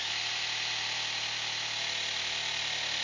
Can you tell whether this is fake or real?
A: real